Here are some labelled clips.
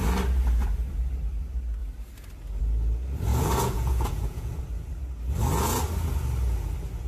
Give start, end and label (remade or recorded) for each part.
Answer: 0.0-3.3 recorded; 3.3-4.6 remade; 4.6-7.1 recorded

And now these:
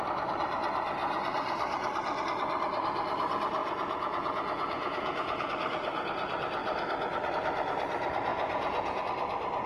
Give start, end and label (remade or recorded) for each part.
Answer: 0.0-3.6 recorded; 3.6-5.5 remade; 5.5-8.3 recorded; 8.3-9.0 remade; 9.0-9.7 recorded